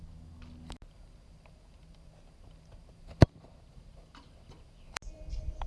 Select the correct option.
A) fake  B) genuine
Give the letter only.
B